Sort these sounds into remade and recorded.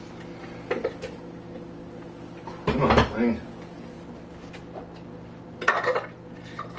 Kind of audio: recorded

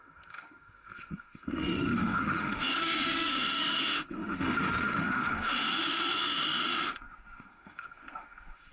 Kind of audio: remade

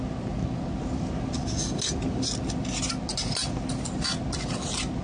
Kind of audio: recorded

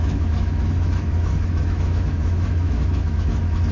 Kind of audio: remade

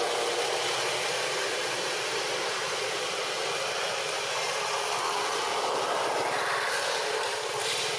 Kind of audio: recorded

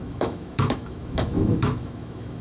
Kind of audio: remade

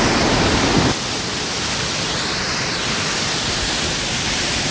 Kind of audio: recorded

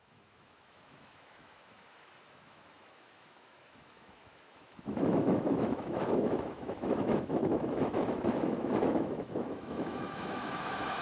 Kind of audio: remade